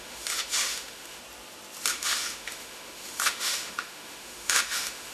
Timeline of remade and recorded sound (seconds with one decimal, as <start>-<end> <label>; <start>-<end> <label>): 0.0-1.2 remade; 1.2-1.9 recorded; 1.9-5.1 remade